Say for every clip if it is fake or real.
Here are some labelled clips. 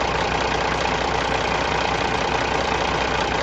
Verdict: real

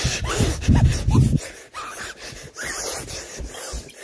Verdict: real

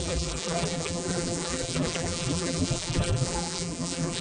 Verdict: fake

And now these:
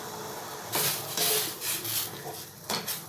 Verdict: real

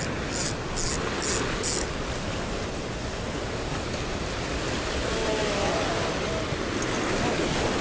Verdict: real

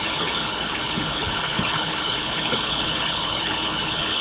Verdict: fake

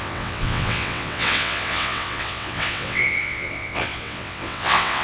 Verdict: fake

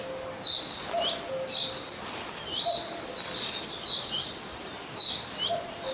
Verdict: real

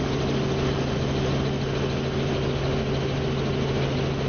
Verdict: real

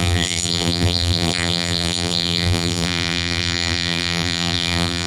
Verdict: fake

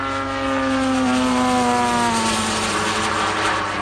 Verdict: real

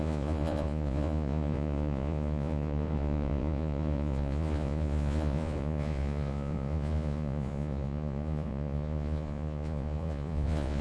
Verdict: fake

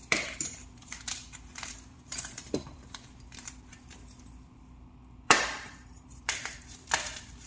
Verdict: fake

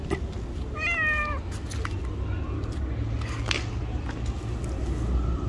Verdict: real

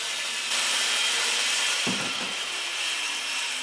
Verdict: fake